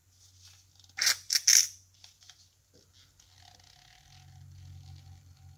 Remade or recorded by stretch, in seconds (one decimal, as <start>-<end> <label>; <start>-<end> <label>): 0.0-5.6 recorded